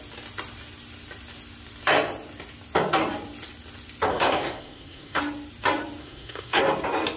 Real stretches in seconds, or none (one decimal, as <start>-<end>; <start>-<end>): 0.0-4.1; 5.2-6.0; 6.6-7.2